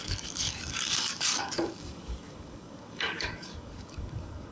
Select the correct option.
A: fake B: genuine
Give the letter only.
A